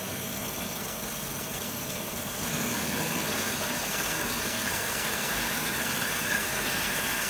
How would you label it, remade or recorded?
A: remade